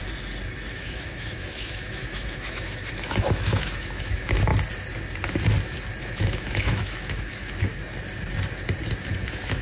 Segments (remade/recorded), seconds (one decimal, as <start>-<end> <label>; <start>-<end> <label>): 0.0-0.7 recorded; 0.7-4.5 remade; 4.5-6.0 recorded; 6.0-7.7 remade; 7.7-9.0 recorded; 9.0-9.6 remade